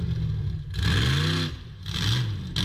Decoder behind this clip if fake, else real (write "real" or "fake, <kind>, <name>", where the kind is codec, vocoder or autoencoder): real